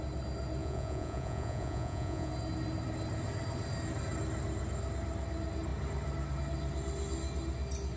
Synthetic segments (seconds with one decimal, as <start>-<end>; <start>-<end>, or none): 0.6-2.3